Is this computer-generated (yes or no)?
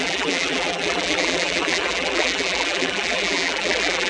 yes